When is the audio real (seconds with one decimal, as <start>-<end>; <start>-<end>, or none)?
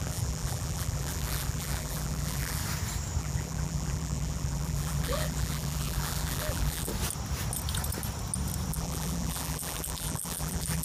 2.6-3.2; 6.9-8.7